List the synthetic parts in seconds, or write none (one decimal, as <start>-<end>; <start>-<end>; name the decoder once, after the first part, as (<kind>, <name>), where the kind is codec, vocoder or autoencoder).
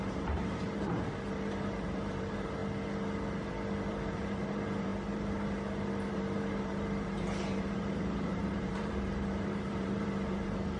0.0-2.6 (vocoder, BigVGAN v2); 3.9-10.8